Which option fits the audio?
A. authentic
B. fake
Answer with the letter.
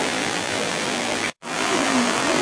B